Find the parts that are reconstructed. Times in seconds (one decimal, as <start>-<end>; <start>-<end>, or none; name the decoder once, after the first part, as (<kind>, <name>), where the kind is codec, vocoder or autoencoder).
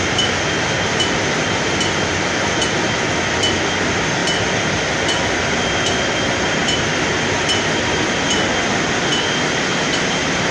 none